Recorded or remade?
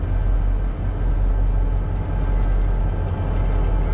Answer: recorded